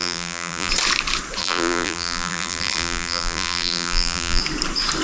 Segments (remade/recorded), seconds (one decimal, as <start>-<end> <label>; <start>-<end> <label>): 0.0-0.7 remade; 0.7-1.4 recorded; 1.4-4.4 remade; 4.4-5.0 recorded